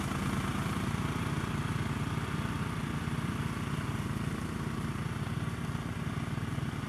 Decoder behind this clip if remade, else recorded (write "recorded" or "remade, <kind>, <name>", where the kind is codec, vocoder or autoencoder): recorded